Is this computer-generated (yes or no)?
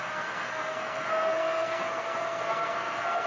yes